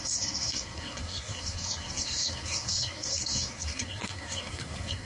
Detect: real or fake fake